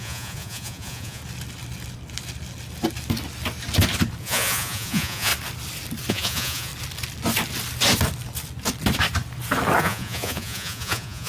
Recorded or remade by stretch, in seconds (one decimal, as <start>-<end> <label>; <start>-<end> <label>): 0.0-1.2 remade; 1.2-4.2 recorded; 4.2-5.3 remade; 5.3-6.1 recorded; 6.1-6.7 remade; 6.7-9.8 recorded; 9.8-11.3 remade

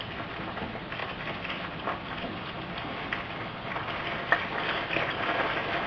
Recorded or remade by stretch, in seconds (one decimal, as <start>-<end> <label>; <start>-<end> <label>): 0.0-5.9 recorded

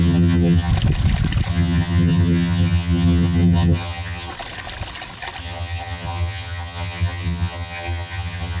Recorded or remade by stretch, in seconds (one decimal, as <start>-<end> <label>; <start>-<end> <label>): 0.0-0.7 remade; 0.7-1.5 recorded; 1.5-4.3 remade; 4.3-5.4 recorded; 5.4-8.6 remade

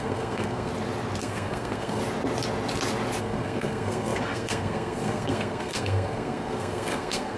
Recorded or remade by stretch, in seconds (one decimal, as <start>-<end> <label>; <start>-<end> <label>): 0.0-0.7 remade; 0.7-1.2 recorded; 1.2-2.0 remade; 2.0-3.2 recorded; 3.2-7.4 remade

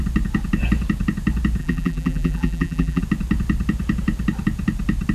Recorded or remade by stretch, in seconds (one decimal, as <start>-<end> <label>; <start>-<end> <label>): 0.0-1.6 recorded; 1.6-3.0 remade; 3.0-5.1 recorded

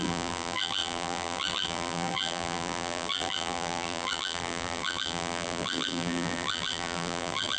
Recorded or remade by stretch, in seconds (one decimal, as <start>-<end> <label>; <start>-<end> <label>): 0.0-7.6 remade

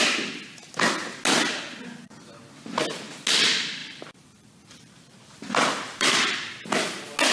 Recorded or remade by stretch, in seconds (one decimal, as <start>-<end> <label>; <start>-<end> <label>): 0.0-3.8 recorded; 3.8-6.7 remade; 6.7-7.3 recorded

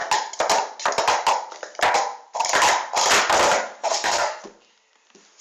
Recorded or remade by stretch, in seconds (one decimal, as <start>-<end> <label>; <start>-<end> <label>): 0.0-3.8 recorded; 3.8-4.4 remade; 4.4-5.4 recorded